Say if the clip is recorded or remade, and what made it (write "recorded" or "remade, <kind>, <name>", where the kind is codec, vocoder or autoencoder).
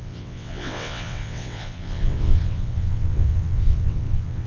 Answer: remade, vocoder, WaveNeXt